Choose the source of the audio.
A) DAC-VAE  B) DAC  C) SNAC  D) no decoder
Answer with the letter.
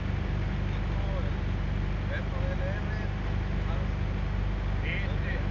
D